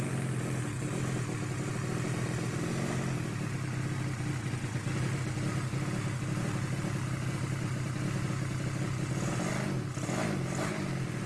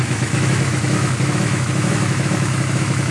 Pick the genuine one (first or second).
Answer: first